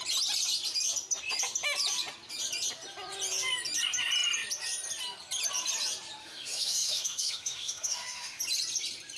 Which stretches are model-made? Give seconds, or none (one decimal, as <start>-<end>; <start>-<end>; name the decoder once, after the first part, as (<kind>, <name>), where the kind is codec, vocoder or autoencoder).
6.2-8.4 (autoencoder, DAC-VAE)